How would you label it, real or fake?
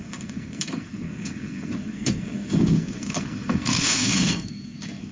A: fake